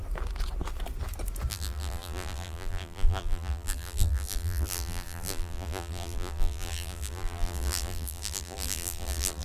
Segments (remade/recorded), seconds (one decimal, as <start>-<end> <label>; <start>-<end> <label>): 0.0-1.5 recorded; 1.5-9.4 remade